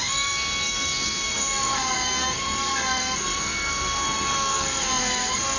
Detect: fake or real fake